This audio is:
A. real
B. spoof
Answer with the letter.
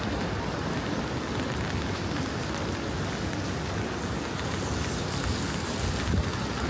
A